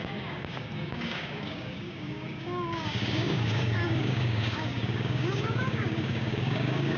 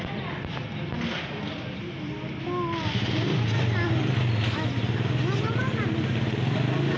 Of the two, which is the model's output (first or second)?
first